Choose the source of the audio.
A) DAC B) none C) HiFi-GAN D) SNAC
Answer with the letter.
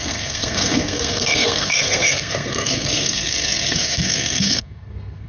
D